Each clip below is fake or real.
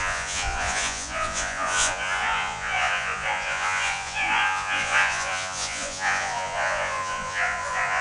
fake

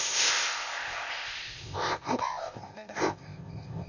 fake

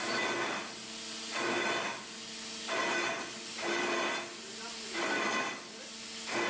real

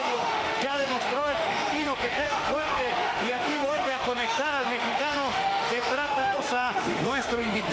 fake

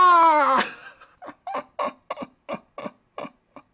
real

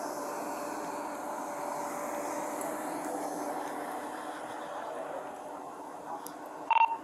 real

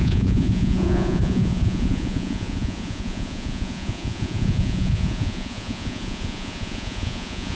fake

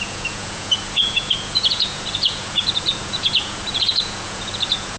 fake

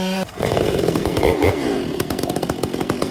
fake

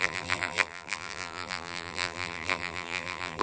fake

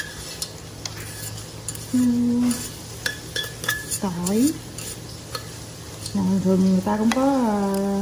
real